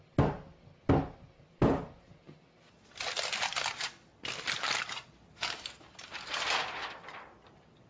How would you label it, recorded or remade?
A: recorded